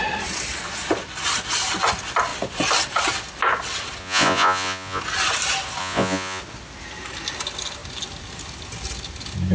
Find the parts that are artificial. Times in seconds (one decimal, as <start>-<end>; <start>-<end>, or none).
4.0-5.0; 5.8-6.4